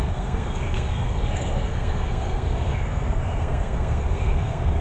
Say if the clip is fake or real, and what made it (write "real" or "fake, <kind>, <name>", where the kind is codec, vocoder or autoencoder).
fake, codec, SNAC